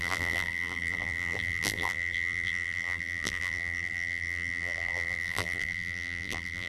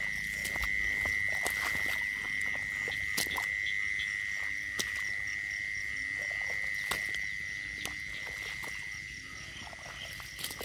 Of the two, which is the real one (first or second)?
second